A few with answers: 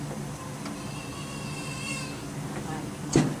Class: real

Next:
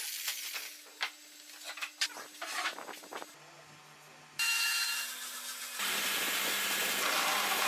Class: real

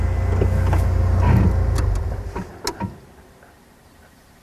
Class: real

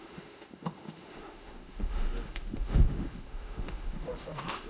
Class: fake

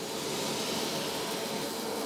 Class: real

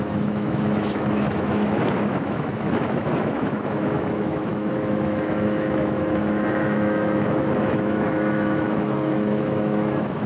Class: fake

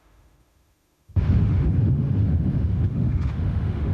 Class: fake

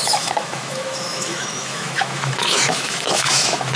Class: fake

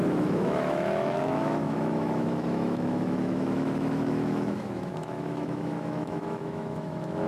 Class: fake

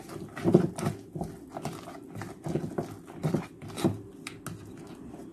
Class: real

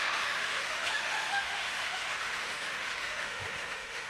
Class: fake